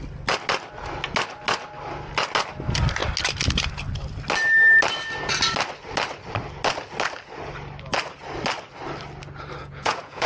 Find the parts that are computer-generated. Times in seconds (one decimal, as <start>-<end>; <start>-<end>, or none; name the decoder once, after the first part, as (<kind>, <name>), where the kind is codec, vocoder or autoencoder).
9.6-10.3 (vocoder, Vocos)